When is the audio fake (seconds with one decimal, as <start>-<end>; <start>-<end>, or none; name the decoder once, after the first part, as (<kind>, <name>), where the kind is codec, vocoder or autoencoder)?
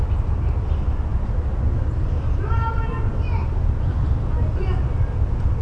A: none